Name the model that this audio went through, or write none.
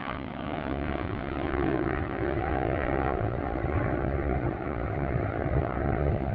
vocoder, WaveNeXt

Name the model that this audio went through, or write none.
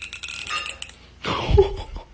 none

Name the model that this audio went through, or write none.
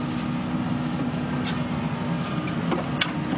none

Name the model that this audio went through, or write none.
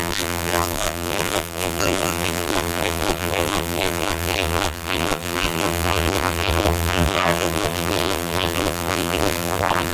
vocoder, BigVGAN v2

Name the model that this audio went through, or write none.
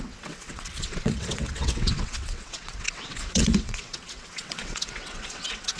vocoder, WaveNeXt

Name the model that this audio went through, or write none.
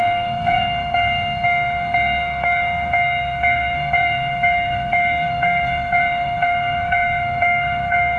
codec, SNAC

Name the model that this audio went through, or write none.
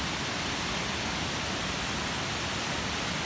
none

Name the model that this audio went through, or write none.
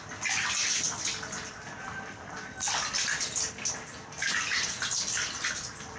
none